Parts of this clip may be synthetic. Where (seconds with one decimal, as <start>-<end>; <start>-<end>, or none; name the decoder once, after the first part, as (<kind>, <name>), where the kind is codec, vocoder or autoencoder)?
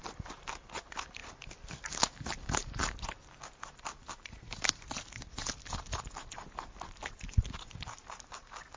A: 0.0-1.2 (vocoder, BigVGAN v2); 5.2-8.8